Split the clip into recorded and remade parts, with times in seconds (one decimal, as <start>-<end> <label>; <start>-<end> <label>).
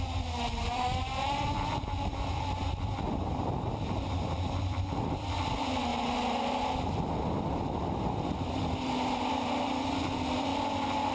0.0-5.9 remade; 5.9-7.6 recorded; 7.6-10.5 remade; 10.5-11.1 recorded